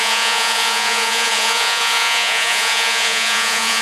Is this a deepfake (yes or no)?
yes